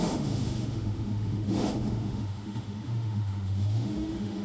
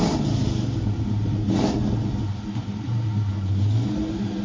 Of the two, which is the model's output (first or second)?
first